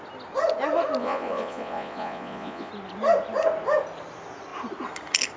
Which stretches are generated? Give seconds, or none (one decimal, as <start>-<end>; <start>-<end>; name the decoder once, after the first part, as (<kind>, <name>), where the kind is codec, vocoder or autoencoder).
1.0-2.7 (vocoder, Vocos)

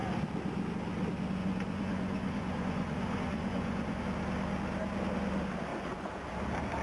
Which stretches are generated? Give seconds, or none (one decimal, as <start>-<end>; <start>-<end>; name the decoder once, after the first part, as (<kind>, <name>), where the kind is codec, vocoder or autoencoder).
1.4-4.0 (vocoder, Vocos); 5.7-6.3

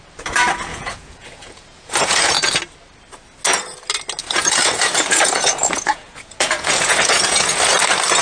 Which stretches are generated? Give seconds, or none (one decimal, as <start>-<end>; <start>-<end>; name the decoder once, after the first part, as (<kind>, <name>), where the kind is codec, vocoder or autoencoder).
0.7-2.3 (vocoder, Vocos); 4.2-7.6

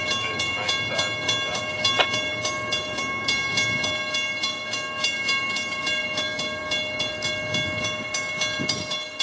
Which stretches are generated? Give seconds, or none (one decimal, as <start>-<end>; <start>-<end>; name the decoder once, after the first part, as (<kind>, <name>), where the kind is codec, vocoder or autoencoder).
none

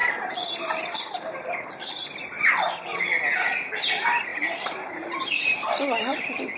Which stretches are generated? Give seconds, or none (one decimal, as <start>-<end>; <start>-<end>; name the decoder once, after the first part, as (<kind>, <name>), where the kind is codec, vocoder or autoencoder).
none

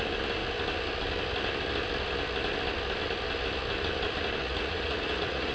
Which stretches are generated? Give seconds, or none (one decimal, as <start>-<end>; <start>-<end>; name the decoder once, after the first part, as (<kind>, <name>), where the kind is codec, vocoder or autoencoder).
4.4-5.5 (vocoder, Vocos)

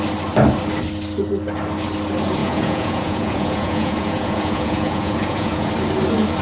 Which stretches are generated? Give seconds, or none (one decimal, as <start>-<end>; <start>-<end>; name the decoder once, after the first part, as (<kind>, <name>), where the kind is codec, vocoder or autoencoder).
2.4-5.7 (vocoder, Vocos)